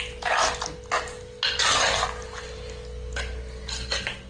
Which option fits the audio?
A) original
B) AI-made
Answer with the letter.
A